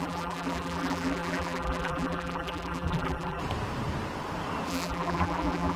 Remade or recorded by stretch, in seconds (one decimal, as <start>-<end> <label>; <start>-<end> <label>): 0.0-3.4 remade; 3.4-4.7 recorded; 4.7-5.8 remade